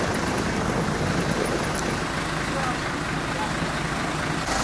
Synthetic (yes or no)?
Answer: no